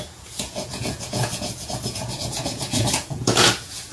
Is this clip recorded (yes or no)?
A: no